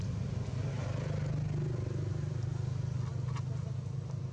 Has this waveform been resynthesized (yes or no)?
no